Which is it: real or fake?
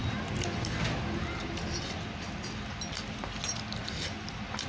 real